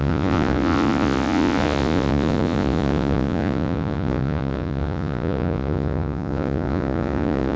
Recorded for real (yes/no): no